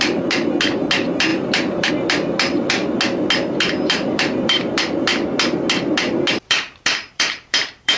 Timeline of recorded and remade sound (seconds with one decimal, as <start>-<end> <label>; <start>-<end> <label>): 0.0-2.8 remade; 2.8-3.7 recorded; 3.7-5.1 remade; 5.1-5.9 recorded; 5.9-8.0 remade